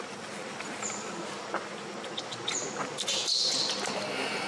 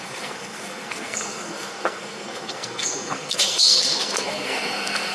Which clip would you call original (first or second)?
first